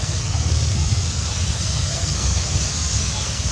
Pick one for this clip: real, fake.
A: fake